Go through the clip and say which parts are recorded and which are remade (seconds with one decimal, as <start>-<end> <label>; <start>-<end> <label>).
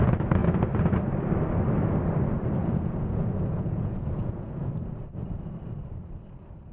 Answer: 0.0-2.6 recorded; 2.6-4.7 remade; 4.7-6.7 recorded